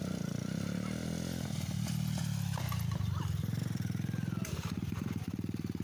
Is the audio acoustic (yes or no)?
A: no